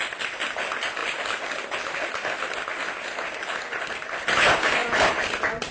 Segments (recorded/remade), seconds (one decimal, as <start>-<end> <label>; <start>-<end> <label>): 0.0-1.0 recorded; 1.0-2.5 remade; 2.5-4.8 recorded; 4.8-5.3 remade; 5.3-5.7 recorded

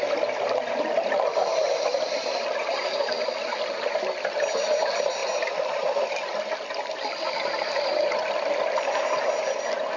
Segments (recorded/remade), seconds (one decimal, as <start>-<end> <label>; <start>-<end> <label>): 0.0-10.0 recorded

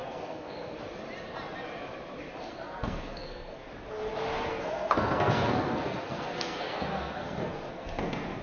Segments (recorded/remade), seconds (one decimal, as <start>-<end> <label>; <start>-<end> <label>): 0.0-0.8 remade; 0.8-2.4 recorded; 2.4-3.7 remade; 3.7-4.5 recorded; 4.5-8.4 remade

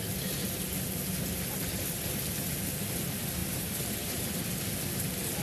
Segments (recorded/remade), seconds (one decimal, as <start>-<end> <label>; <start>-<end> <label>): 0.0-3.4 recorded; 3.4-4.2 remade; 4.2-5.4 recorded

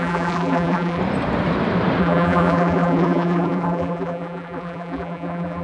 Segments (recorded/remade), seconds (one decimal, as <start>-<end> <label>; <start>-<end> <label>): 0.0-1.0 remade; 1.0-2.0 recorded; 2.0-5.6 remade

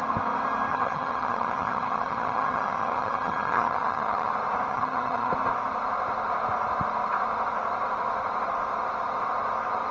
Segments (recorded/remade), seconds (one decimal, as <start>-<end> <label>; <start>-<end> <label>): 0.0-0.7 recorded; 0.7-4.3 remade; 4.3-4.7 recorded; 4.7-5.3 remade; 5.3-9.9 recorded

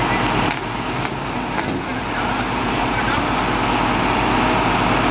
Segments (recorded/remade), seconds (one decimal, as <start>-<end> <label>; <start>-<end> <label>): 0.0-1.9 recorded; 1.9-3.4 remade; 3.4-5.1 recorded